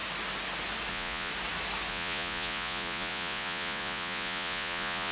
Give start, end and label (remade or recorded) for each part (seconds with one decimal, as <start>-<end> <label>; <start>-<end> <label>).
0.0-0.9 recorded; 0.9-1.3 remade; 1.3-1.9 recorded; 1.9-5.1 remade